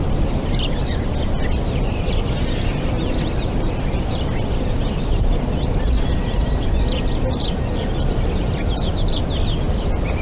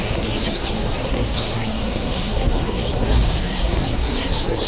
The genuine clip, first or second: first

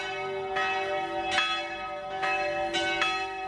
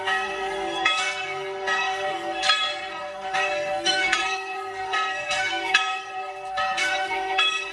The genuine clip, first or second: first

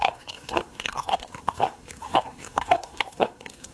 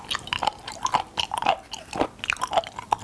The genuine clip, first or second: second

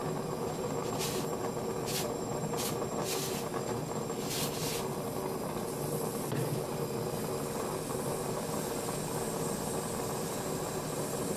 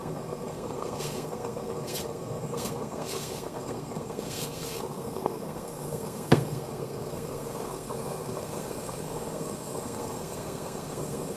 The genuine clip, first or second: first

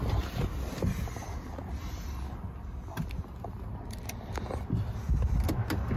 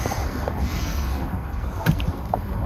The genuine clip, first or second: first